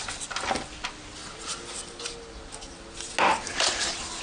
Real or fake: real